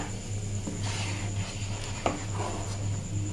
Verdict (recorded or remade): recorded